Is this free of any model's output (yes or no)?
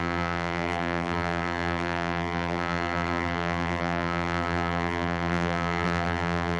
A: no